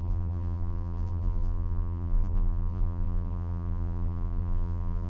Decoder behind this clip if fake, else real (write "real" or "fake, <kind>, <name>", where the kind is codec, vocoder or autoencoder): fake, vocoder, BigVGAN v2